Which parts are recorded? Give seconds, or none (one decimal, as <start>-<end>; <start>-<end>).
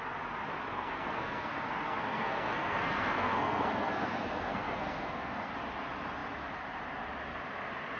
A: 0.0-0.7; 5.5-8.0